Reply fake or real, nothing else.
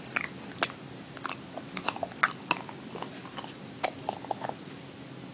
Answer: real